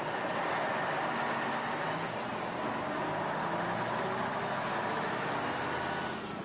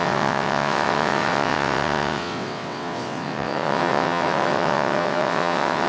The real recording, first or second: first